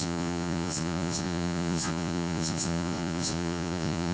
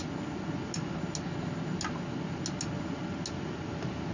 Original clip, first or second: second